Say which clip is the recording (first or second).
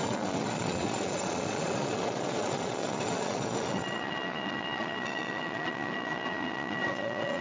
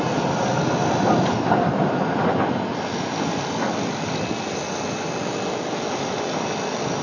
second